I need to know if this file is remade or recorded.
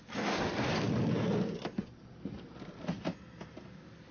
recorded